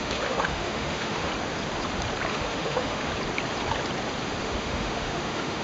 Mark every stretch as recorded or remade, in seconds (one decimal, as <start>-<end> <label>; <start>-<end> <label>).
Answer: 0.0-1.3 remade; 1.3-2.3 recorded; 2.3-3.1 remade; 3.1-4.4 recorded; 4.4-5.6 remade